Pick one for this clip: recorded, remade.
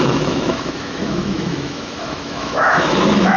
remade